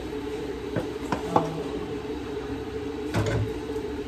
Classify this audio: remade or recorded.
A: remade